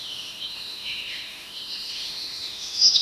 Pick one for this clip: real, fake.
fake